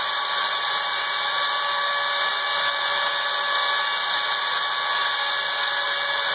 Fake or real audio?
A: real